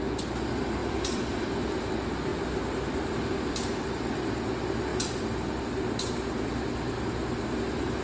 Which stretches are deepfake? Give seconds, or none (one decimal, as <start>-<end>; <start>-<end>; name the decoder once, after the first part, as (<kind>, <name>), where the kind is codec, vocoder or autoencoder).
0.8-1.9 (vocoder, BigVGAN v2); 2.3-3.1; 4.9-5.5